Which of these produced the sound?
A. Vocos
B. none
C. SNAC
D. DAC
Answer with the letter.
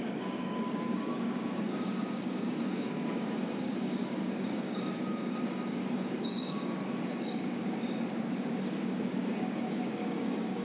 D